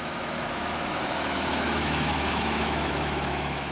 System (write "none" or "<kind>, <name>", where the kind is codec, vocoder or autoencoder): autoencoder, DAC-VAE